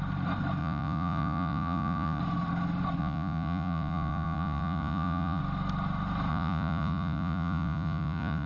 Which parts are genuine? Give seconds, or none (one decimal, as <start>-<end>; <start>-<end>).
0.0-0.6; 2.2-3.0; 5.4-6.3